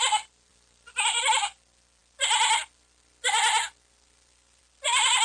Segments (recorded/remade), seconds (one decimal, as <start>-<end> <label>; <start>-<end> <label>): 0.0-5.2 recorded